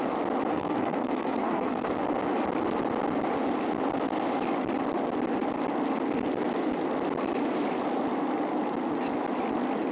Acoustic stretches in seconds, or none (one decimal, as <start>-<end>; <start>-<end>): 0.0-0.5; 1.9-9.9